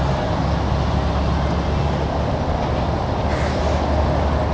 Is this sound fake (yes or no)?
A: no